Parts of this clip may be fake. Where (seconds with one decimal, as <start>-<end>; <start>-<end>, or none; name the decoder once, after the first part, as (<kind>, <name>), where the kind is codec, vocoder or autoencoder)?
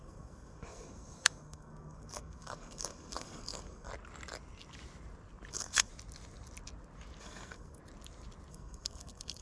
0.0-3.9 (codec, SNAC); 5.5-5.9; 7.2-7.8; 8.5-9.4